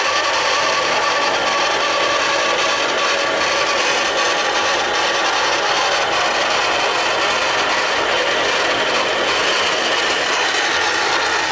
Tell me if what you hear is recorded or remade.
recorded